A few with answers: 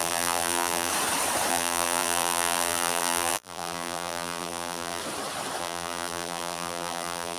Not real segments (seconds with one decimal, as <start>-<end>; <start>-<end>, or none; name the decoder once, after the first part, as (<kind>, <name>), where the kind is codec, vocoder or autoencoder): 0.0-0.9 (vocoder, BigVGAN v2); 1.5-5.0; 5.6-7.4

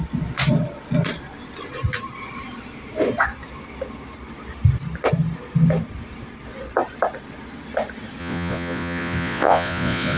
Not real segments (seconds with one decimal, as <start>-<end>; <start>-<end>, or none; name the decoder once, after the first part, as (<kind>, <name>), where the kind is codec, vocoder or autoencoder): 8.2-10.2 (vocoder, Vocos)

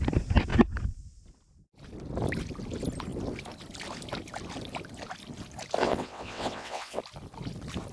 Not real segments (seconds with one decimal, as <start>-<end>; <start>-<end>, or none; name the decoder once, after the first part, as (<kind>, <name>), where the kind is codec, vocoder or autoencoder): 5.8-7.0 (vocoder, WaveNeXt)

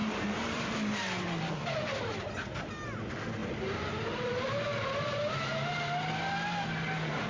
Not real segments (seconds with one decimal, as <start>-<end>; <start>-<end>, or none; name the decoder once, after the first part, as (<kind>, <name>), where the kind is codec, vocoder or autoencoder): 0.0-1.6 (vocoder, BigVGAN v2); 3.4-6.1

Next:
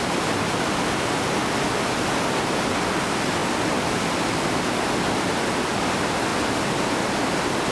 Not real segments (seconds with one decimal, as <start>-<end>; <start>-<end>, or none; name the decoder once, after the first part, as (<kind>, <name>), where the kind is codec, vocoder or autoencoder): none

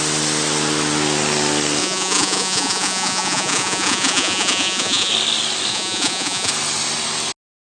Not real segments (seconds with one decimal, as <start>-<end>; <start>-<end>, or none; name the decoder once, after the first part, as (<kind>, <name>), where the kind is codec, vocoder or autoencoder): 1.8-5.1 (vocoder, Vocos); 5.7-6.5

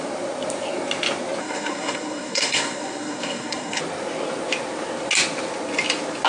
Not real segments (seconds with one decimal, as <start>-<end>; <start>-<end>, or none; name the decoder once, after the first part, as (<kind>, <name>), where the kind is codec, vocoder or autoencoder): 1.4-3.8 (codec, SNAC)

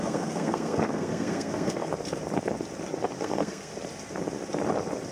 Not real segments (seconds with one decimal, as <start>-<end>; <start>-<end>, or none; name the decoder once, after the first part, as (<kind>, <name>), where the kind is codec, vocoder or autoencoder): 0.0-1.9 (codec, SNAC); 3.2-3.7